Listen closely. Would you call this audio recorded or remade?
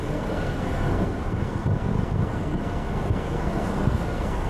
remade